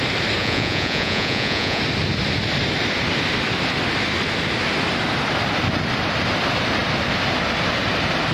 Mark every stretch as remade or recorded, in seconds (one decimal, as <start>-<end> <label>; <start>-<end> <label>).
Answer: 0.0-0.4 recorded; 0.4-1.8 remade; 1.8-8.3 recorded